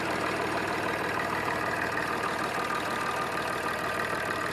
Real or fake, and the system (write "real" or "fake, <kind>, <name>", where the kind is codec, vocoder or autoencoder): fake, vocoder, BigVGAN v2